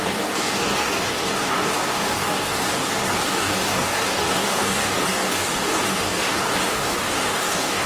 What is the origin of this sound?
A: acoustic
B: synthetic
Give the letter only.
B